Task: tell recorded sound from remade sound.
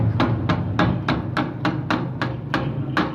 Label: recorded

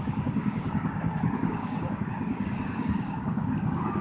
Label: remade